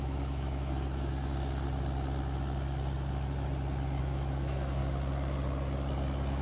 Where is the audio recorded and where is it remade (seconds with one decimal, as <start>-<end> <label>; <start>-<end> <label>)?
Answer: 0.0-1.3 remade; 1.3-4.0 recorded; 4.0-4.8 remade; 4.8-6.4 recorded